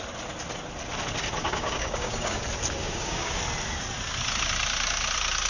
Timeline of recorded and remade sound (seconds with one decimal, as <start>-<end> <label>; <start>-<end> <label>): 0.0-1.4 recorded; 1.4-2.4 remade; 2.4-2.8 recorded; 2.8-3.4 remade; 3.4-5.5 recorded